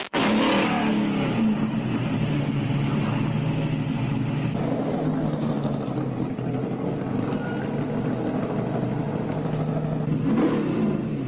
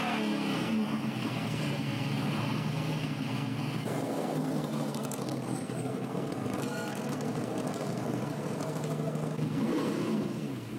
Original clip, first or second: first